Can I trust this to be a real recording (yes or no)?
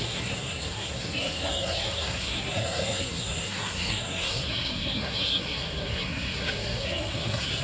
no